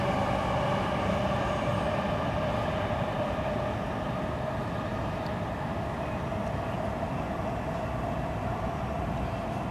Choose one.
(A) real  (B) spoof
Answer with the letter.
A